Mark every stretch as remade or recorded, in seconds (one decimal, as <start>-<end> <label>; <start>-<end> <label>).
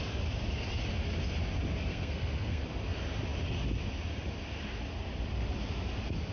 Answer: 0.0-1.9 recorded; 1.9-2.6 remade; 2.6-6.3 recorded